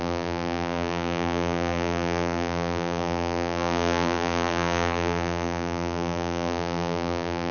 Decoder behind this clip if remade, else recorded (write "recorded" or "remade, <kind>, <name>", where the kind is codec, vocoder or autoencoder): remade, vocoder, BigVGAN v2